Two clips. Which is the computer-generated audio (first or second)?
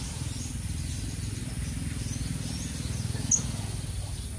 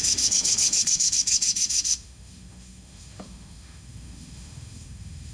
second